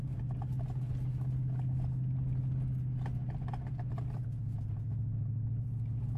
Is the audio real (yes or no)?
yes